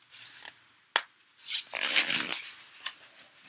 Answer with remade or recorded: recorded